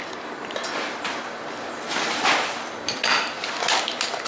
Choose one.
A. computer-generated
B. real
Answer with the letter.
B